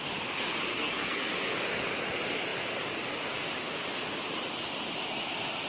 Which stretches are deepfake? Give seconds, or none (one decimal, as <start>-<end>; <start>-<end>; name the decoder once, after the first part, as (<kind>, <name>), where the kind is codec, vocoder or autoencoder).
0.7-1.3 (codec, SNAC)